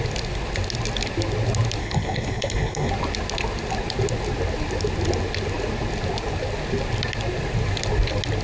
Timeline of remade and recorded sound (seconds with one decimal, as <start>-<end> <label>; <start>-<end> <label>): 0.0-1.8 recorded; 1.8-2.9 remade; 2.9-8.4 recorded